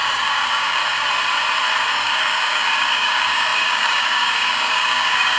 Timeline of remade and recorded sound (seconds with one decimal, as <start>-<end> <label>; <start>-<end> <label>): 0.0-0.8 remade; 0.8-1.9 recorded; 1.9-5.4 remade